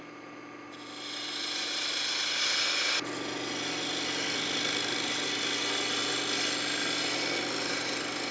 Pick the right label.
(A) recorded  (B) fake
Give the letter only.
A